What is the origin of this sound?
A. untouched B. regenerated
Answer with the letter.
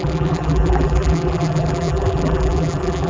B